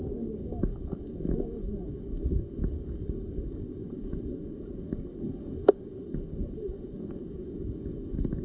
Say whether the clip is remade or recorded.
remade